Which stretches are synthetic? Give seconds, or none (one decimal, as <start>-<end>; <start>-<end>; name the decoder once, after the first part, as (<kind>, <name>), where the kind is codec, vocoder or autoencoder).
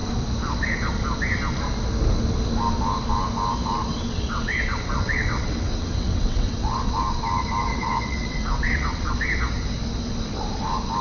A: 3.9-6.9 (vocoder, WaveNeXt); 7.7-9.1